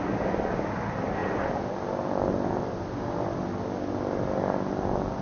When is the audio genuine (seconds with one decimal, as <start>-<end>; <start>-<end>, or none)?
0.0-5.2